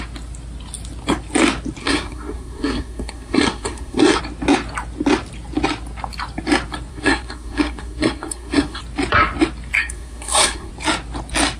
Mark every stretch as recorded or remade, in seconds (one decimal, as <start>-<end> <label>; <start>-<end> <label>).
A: 0.0-1.8 recorded; 1.8-4.2 remade; 4.2-6.9 recorded; 6.9-8.8 remade; 8.8-9.8 recorded; 9.8-10.7 remade; 10.7-11.6 recorded